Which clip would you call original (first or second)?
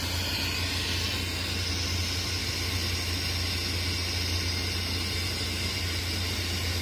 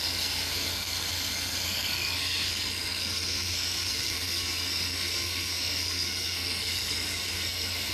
first